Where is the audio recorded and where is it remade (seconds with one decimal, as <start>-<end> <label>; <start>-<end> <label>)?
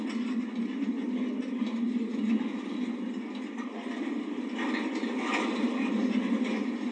0.0-6.9 recorded